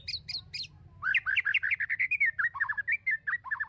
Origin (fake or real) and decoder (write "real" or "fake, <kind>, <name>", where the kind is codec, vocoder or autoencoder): real